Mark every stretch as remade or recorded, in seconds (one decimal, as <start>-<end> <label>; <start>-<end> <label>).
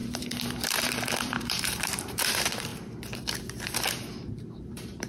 0.0-2.7 remade; 2.7-4.4 recorded; 4.4-5.1 remade